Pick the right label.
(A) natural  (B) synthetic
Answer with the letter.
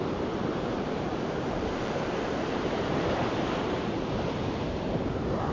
B